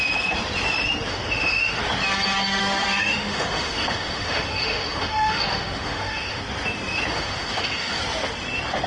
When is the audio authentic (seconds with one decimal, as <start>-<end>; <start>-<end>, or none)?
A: 0.0-1.1; 1.8-2.6; 6.4-7.1; 8.0-8.9